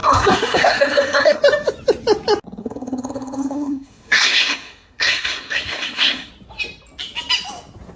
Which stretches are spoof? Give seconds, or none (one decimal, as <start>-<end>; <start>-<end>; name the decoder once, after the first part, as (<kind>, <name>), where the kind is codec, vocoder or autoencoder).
0.0-1.4 (codec, SNAC); 2.6-6.3